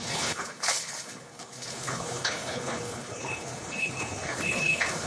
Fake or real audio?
fake